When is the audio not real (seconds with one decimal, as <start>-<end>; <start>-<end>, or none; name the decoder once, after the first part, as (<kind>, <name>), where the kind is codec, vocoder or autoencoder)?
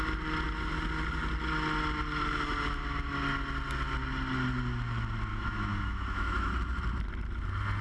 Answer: 5.3-6.5 (autoencoder, DAC-VAE)